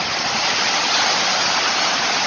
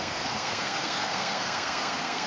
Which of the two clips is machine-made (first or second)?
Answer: second